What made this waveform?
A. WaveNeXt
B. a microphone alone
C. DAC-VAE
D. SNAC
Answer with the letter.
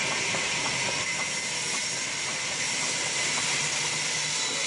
B